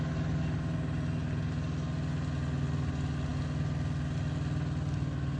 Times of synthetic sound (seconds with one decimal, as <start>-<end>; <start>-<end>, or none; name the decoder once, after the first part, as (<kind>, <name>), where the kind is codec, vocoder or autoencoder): none